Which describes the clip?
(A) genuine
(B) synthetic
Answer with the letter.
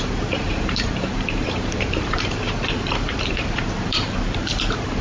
B